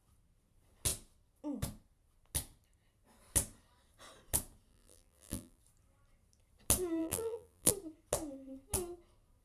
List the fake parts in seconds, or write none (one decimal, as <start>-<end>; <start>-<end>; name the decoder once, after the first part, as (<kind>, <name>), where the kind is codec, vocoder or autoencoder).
4.7-5.6 (vocoder, BigVGAN v2); 7.0-7.7